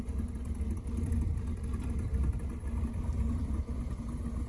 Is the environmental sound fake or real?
real